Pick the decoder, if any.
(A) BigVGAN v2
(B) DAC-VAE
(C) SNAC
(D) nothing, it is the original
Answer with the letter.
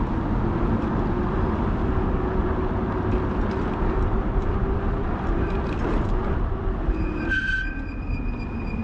D